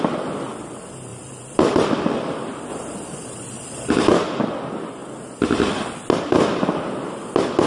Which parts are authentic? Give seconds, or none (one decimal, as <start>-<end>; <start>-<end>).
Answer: 0.0-7.7